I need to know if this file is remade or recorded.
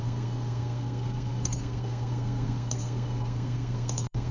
remade